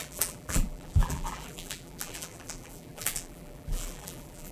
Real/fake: fake